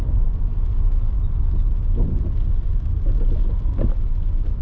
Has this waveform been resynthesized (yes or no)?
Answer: no